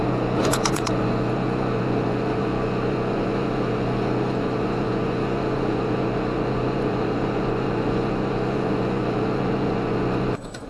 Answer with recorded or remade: remade